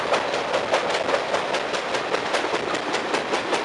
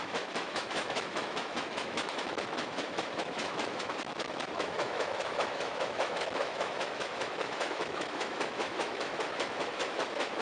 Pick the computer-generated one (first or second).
second